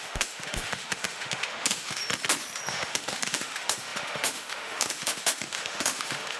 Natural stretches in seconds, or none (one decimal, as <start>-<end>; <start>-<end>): 2.0-2.7